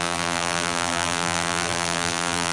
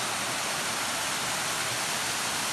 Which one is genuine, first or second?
second